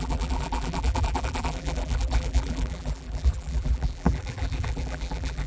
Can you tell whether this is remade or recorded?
remade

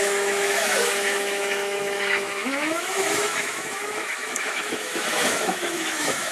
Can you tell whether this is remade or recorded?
remade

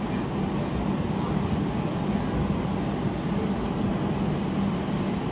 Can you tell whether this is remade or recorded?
recorded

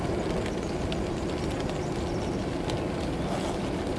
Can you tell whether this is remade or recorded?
recorded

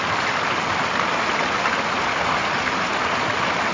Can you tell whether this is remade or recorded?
recorded